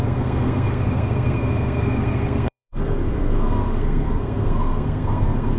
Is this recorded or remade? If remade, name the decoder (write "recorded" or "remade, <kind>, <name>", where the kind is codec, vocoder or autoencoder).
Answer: remade, codec, SNAC